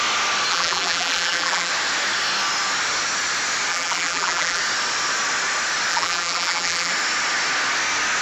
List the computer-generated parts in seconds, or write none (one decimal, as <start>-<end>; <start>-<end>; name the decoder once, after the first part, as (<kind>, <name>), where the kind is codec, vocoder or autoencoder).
0.5-1.7 (vocoder, BigVGAN v2); 3.7-4.6; 5.9-6.9